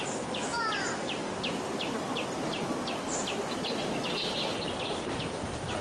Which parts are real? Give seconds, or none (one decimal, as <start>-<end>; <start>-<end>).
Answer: 0.0-5.8